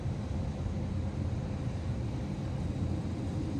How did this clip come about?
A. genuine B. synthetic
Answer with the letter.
A